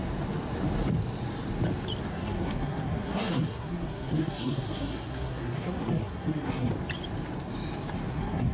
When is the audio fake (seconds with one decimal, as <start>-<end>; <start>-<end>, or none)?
2.1-6.7; 8.1-8.5